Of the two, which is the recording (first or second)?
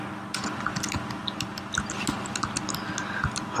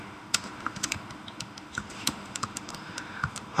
first